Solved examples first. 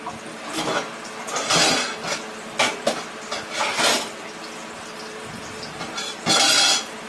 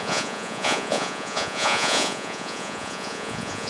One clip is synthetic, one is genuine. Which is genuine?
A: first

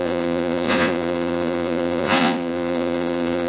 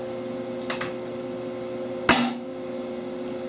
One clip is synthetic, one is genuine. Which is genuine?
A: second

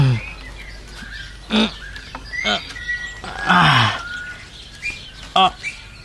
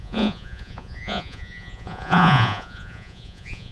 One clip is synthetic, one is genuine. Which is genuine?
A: first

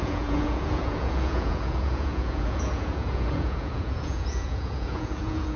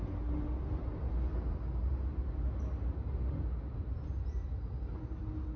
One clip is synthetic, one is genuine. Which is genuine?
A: second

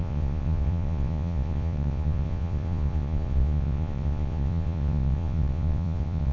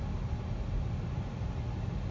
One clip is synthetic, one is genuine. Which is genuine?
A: second